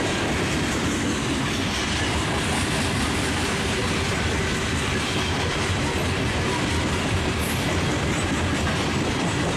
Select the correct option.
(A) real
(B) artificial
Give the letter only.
B